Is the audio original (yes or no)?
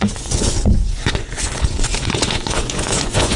no